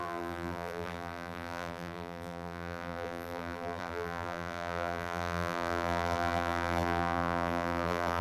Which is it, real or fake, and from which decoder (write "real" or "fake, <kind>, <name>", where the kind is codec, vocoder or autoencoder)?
fake, vocoder, BigVGAN v2